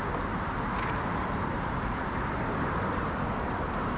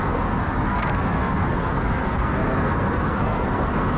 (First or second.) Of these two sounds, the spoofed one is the second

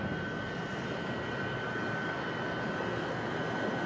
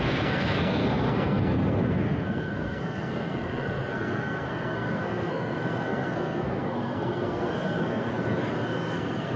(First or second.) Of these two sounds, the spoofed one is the second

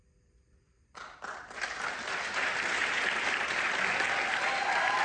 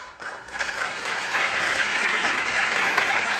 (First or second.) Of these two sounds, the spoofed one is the second